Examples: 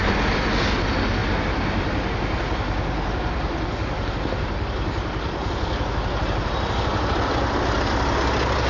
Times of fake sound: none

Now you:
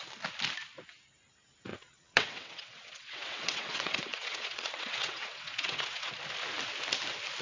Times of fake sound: 1.7-6.1 (vocoder, WaveNeXt)